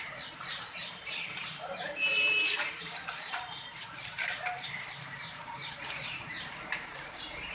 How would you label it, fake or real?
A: fake